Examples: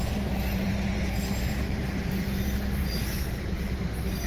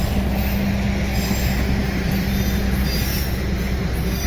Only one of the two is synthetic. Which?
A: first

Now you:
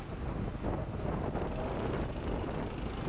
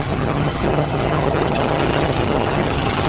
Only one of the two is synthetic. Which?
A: second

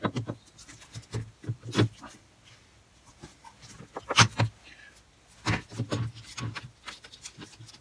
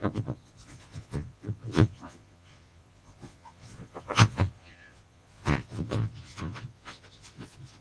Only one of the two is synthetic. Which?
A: second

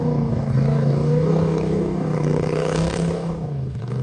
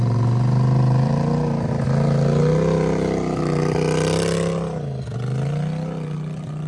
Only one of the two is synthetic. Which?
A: first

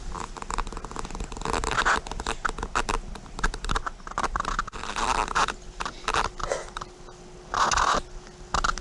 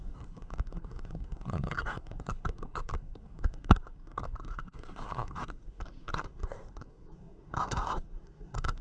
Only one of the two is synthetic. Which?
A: second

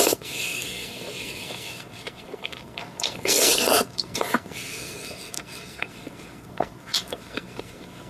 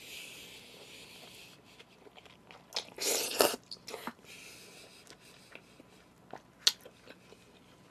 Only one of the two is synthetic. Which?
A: first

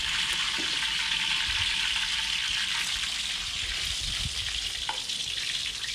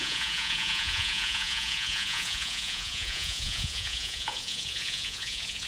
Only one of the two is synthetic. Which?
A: second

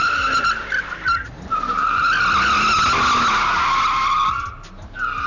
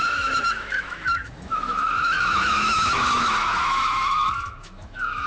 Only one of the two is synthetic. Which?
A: second